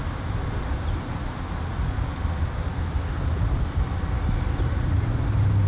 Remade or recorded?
recorded